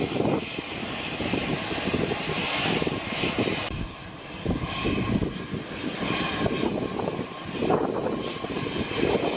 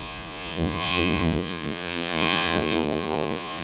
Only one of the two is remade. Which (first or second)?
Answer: second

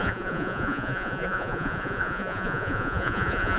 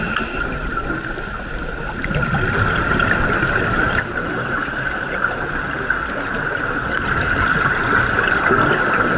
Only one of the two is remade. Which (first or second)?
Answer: first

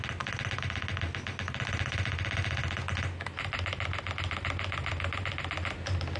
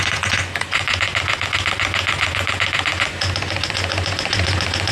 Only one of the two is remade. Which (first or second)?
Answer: second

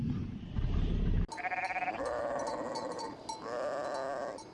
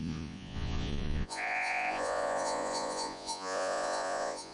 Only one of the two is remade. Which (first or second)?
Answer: second